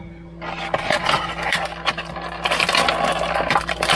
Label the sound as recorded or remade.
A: recorded